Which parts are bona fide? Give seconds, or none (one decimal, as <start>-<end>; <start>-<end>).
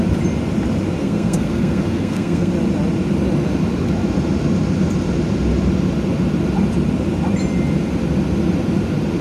0.0-1.0; 2.5-9.2